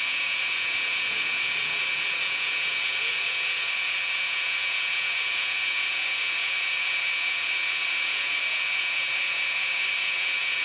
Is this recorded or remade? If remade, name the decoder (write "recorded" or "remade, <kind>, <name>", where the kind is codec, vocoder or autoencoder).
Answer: remade, vocoder, Vocos